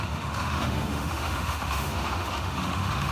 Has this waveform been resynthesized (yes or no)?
yes